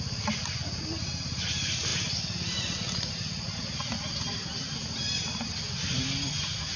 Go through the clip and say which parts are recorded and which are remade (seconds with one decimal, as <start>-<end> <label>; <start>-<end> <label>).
0.0-6.8 recorded